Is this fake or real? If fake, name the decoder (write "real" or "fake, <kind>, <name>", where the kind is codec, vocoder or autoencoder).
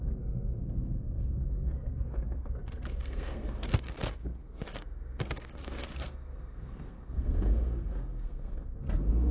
fake, codec, SNAC